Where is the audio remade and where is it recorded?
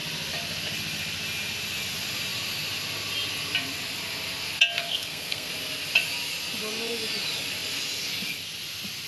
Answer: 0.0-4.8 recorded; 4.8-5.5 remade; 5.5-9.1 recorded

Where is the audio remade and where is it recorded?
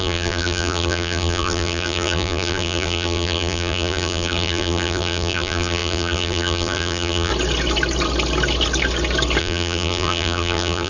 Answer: 0.0-7.3 remade; 7.3-9.4 recorded; 9.4-10.9 remade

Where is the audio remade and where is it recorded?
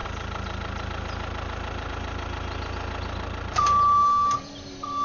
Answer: 0.0-5.0 recorded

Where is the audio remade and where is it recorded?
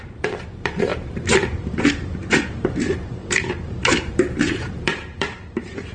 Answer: 0.0-5.9 remade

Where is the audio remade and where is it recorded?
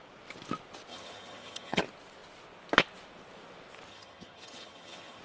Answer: 0.0-0.9 recorded; 0.9-1.8 remade; 1.8-3.9 recorded; 3.9-5.2 remade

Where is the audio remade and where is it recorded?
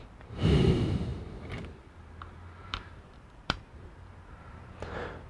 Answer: 0.0-1.1 remade; 1.1-2.7 recorded; 2.7-5.3 remade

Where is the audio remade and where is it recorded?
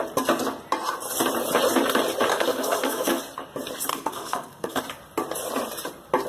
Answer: 0.0-2.3 recorded; 2.3-3.2 remade; 3.2-3.9 recorded; 3.9-4.8 remade; 4.8-6.3 recorded